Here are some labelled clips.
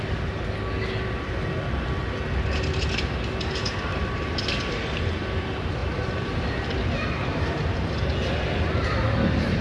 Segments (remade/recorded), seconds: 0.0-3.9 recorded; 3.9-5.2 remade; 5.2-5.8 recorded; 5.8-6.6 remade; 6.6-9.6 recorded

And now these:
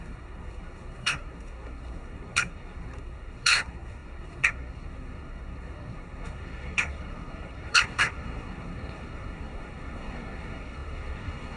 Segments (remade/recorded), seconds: 0.0-11.6 remade